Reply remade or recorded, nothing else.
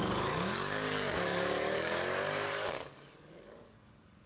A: remade